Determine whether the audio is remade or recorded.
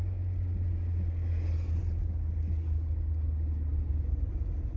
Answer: recorded